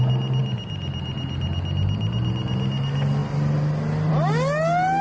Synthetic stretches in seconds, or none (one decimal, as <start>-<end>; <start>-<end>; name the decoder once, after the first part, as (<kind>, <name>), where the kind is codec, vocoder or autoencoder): none